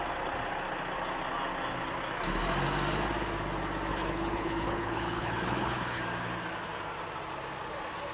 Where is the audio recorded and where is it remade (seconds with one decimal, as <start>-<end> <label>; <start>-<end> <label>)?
0.0-3.9 recorded; 3.9-6.0 remade; 6.0-8.1 recorded